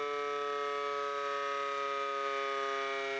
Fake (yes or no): no